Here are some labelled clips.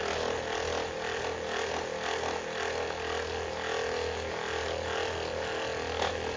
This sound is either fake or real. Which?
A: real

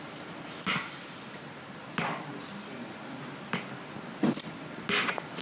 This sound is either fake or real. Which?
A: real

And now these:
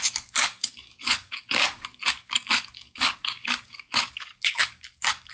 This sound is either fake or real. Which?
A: fake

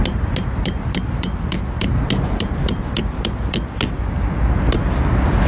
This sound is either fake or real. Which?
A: real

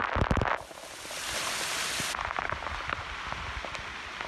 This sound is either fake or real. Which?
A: real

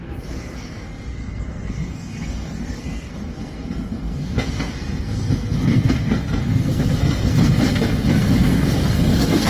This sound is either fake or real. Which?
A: fake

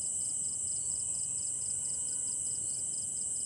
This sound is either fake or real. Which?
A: real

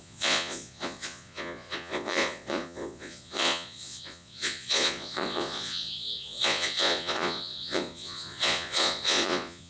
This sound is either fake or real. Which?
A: fake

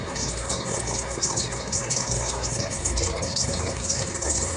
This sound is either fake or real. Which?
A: fake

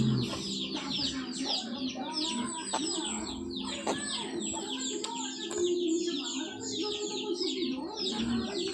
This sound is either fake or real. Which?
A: real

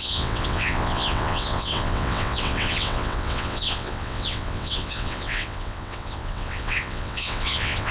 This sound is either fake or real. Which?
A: fake